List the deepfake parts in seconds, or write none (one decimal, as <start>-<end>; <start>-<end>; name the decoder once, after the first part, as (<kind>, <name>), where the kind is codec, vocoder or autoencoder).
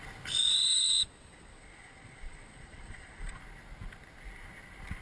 0.4-3.4 (vocoder, Vocos)